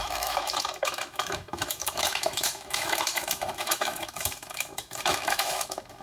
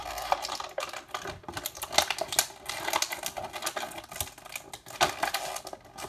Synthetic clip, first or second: first